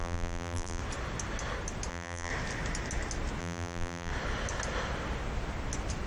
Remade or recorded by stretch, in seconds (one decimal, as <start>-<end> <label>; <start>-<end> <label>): 0.0-0.8 remade; 0.8-1.9 recorded; 1.9-2.3 remade; 2.3-3.4 recorded; 3.4-4.1 remade; 4.1-6.1 recorded